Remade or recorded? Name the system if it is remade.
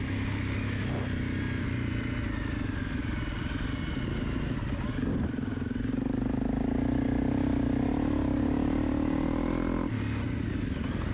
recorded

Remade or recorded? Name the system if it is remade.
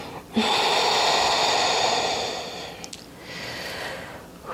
remade, vocoder, BigVGAN v2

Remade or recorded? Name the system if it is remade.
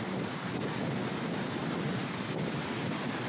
recorded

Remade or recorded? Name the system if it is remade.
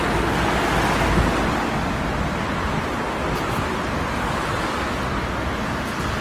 recorded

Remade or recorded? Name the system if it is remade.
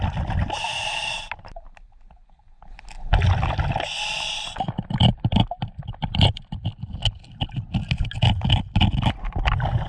recorded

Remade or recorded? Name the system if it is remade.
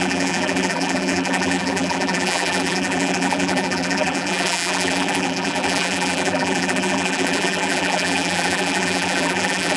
remade, vocoder, BigVGAN v2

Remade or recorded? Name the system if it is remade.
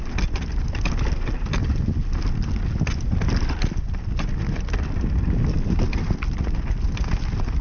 recorded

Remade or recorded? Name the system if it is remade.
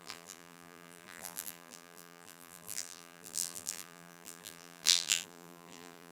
remade, vocoder, BigVGAN v2